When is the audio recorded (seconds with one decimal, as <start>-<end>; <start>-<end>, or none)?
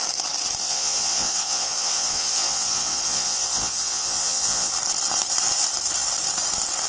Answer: 0.0-0.6; 4.7-6.9